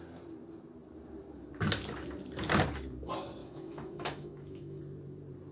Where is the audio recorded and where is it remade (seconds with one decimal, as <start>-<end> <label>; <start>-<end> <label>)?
0.0-3.4 recorded; 3.4-4.8 remade; 4.8-5.5 recorded